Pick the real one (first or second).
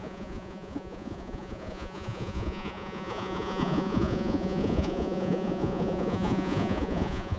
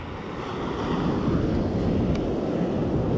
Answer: second